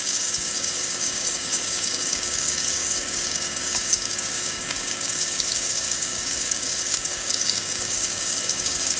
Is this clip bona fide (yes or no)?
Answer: no